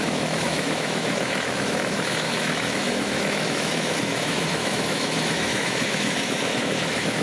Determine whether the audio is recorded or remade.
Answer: remade